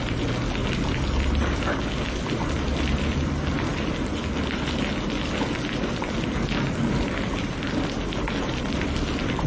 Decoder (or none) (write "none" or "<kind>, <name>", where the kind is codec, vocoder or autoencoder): none